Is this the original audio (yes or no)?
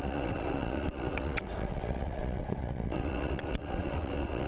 no